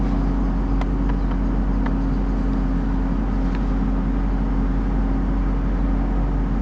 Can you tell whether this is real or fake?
real